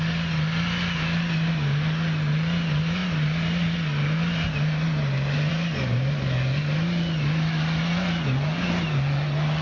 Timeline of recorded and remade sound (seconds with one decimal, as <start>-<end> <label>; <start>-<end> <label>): 0.0-9.6 recorded